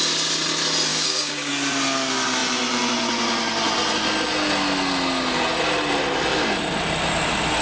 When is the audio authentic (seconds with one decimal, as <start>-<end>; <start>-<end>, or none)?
0.0-0.9; 1.5-7.6